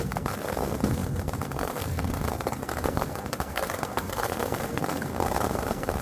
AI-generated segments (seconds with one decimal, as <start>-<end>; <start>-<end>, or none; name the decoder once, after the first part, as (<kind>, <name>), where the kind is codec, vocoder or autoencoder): 0.0-6.0 (codec, SNAC)